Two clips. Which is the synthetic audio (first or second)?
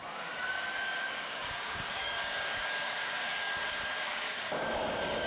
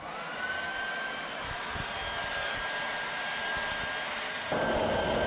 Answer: first